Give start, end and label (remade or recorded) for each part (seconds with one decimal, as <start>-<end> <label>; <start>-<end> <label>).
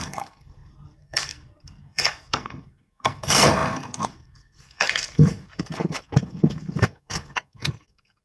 0.0-8.2 remade